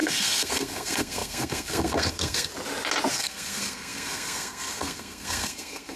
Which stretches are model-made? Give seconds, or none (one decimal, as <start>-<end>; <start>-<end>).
0.0-2.5; 3.1-6.0